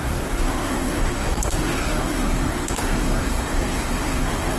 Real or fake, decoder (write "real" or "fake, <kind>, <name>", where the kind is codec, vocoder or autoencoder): fake, codec, SNAC